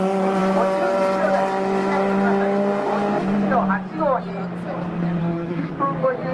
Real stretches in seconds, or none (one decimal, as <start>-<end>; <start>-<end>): 0.0-5.2; 5.7-6.3